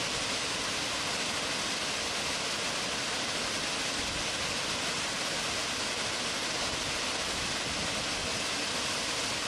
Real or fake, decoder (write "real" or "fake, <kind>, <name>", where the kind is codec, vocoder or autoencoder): real